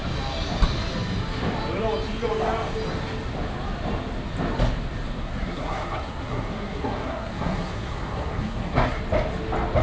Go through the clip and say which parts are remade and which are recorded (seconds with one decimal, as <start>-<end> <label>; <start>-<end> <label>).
0.0-5.2 recorded; 5.2-9.0 remade; 9.0-9.8 recorded